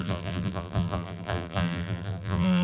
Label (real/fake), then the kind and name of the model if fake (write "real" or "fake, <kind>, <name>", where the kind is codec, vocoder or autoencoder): fake, vocoder, BigVGAN v2